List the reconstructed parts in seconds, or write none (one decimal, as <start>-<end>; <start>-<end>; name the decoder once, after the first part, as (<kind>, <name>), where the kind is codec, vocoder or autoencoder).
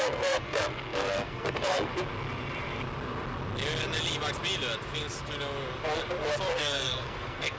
0.0-1.9 (codec, SNAC); 6.5-7.6